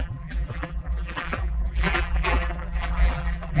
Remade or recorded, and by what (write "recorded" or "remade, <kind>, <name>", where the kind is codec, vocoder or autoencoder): remade, vocoder, BigVGAN v2